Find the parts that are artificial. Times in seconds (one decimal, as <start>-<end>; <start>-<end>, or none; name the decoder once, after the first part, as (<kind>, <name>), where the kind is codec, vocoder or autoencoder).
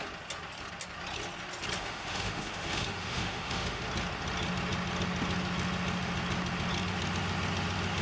1.8-3.8 (autoencoder, DAC-VAE)